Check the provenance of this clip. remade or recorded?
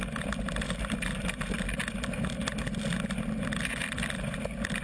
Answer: recorded